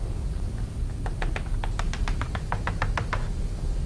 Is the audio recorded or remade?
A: recorded